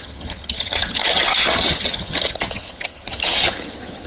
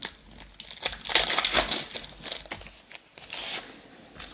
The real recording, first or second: second